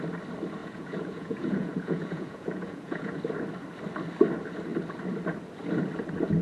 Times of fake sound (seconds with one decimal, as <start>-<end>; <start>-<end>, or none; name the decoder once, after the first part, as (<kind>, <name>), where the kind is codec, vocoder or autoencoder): 0.6-3.2 (vocoder, Vocos)